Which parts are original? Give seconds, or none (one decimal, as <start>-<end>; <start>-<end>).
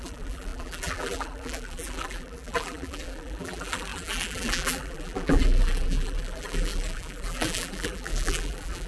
none